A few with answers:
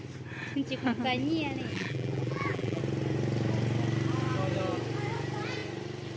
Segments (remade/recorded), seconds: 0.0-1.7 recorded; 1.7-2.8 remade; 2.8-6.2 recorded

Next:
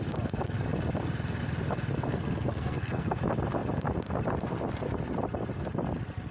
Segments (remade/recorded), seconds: 0.0-2.1 recorded; 2.1-3.2 remade; 3.2-6.3 recorded

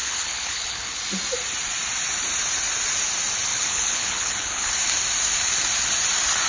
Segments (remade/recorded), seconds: 0.0-1.0 remade; 1.0-3.5 recorded; 3.5-4.7 remade; 4.7-6.5 recorded